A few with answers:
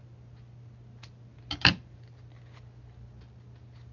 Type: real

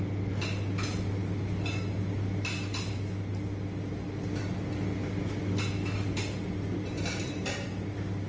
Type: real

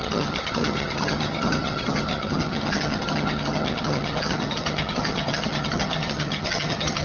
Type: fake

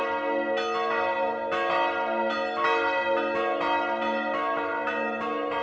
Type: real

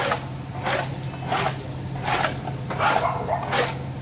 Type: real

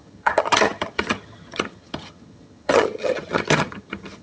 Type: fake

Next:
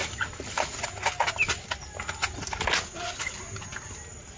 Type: real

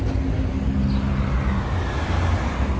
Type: real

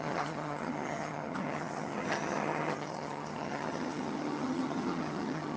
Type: fake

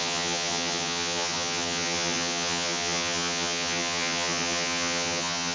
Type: fake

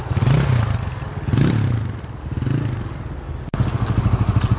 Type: real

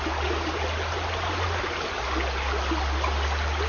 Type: real